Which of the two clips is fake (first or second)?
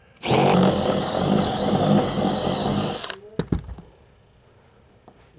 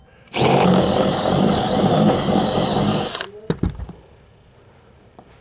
second